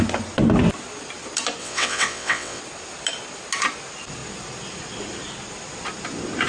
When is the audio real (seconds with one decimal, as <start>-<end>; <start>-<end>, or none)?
0.0-1.6; 2.6-6.5